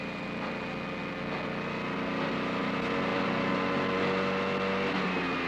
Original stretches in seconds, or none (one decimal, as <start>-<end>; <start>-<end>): 0.0-5.5